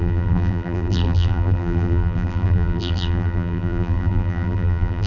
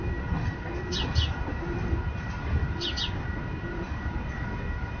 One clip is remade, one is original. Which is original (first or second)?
second